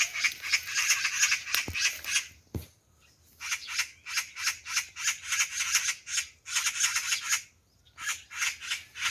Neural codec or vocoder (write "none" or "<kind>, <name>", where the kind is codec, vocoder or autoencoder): none